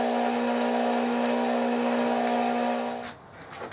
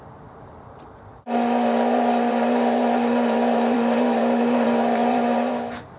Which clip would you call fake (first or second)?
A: second